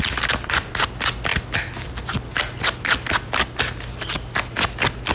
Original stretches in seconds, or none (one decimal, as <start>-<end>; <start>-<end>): 0.0-5.1

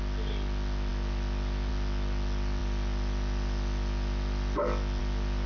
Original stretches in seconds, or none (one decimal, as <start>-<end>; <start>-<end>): 0.0-5.5

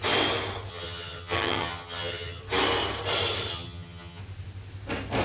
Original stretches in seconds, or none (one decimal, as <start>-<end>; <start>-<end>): 0.0-0.7; 2.4-3.5; 4.2-5.2